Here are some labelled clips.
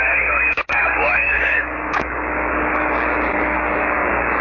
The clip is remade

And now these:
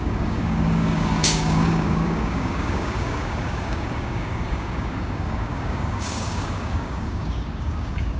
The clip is remade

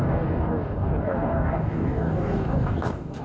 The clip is remade